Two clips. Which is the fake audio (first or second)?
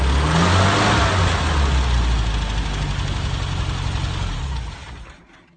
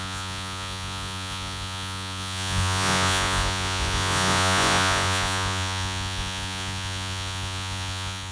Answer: second